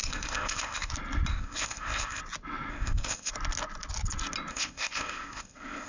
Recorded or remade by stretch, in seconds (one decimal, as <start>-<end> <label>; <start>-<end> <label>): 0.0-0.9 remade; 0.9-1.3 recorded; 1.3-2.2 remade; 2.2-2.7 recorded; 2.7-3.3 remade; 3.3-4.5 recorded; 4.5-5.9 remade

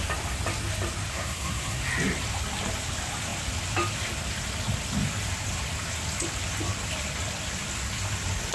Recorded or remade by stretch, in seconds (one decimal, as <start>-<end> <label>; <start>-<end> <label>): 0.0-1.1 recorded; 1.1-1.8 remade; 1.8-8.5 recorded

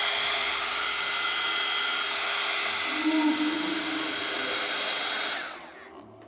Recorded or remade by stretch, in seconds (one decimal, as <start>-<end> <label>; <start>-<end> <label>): 0.0-4.9 recorded; 4.9-5.6 remade; 5.6-6.3 recorded

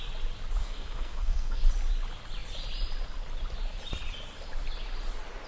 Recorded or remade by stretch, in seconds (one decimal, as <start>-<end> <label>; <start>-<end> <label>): 0.0-0.6 recorded; 0.6-1.6 remade; 1.6-5.5 recorded

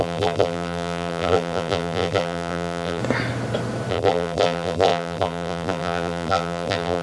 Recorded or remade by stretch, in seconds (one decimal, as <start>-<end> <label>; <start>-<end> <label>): 0.0-3.0 remade; 3.0-3.9 recorded; 3.9-7.0 remade

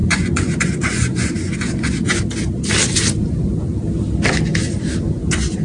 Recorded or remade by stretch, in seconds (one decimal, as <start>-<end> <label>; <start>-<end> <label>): 0.0-2.2 remade; 2.2-5.6 recorded

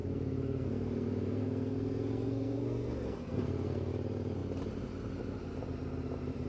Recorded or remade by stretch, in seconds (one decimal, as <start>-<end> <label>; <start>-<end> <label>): 0.0-3.9 remade; 3.9-6.5 recorded

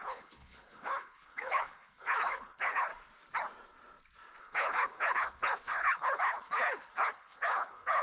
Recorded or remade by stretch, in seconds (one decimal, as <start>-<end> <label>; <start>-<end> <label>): 0.0-2.9 remade; 2.9-4.4 recorded; 4.4-8.0 remade